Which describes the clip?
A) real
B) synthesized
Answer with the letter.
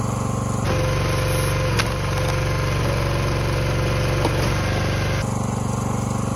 A